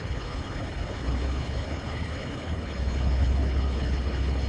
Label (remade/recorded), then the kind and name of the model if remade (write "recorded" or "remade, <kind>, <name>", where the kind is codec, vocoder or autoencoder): remade, codec, HILCodec